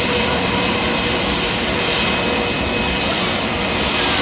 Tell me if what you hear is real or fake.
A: real